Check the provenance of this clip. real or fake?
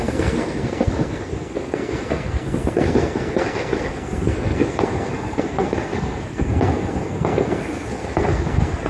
fake